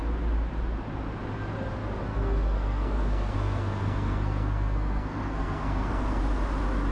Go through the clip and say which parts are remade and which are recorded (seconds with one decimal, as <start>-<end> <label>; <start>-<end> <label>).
0.0-2.1 recorded; 2.1-6.2 remade; 6.2-6.9 recorded